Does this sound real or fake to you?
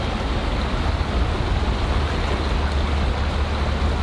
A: real